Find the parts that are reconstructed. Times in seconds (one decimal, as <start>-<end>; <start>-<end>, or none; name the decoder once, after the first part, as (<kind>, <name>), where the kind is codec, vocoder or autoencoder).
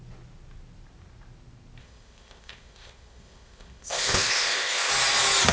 1.8-4.9 (codec, ZipCodec)